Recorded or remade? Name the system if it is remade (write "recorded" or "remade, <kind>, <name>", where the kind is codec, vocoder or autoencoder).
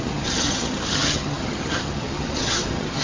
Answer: remade, vocoder, HiFi-GAN